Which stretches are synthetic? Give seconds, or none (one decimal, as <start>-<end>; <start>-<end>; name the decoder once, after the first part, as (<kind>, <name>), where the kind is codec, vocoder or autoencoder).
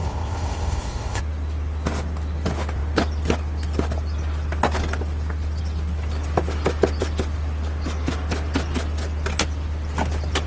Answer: 0.0-1.2 (codec, ZipCodec)